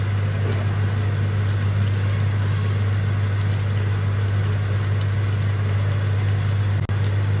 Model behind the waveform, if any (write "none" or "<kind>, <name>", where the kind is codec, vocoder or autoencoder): none